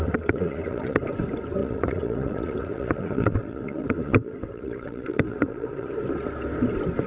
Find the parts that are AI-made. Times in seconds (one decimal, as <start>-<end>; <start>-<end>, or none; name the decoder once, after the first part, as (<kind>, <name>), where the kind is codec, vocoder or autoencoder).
0.0-1.0 (vocoder, WaveNeXt); 1.6-5.9